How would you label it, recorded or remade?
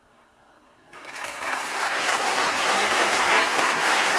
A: remade